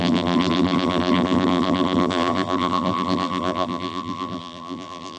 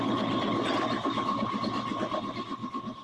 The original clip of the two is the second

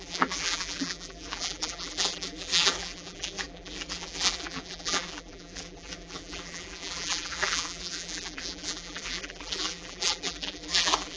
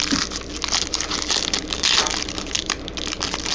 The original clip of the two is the second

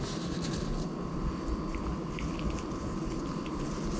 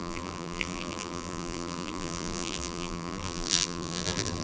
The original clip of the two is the first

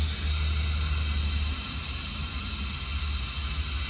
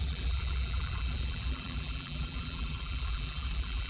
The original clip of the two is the first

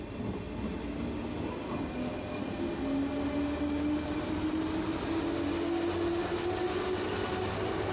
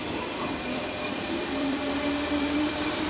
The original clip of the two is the first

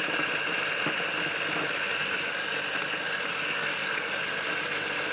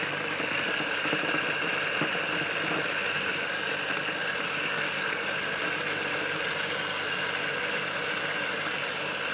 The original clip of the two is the first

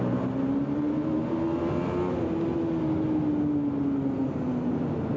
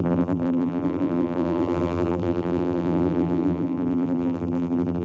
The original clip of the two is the first